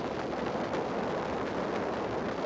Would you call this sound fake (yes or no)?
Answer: no